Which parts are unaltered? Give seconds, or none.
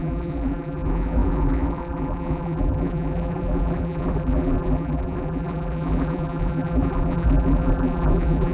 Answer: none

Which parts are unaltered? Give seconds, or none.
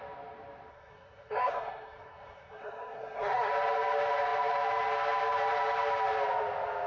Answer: 0.0-0.7; 3.5-6.9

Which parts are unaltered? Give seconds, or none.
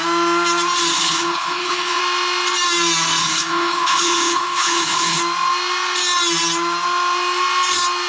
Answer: 0.0-0.9; 2.0-3.2; 5.2-8.1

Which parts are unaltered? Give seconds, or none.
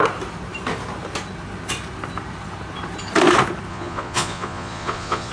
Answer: 0.0-3.7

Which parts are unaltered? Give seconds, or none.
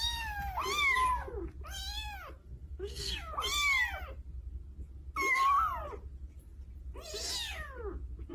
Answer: 0.0-2.4; 3.1-8.3